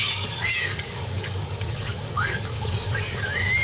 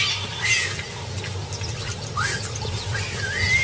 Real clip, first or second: second